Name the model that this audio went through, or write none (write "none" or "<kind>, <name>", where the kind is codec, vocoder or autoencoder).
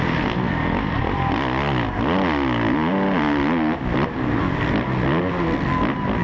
none